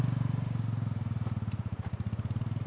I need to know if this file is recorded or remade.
recorded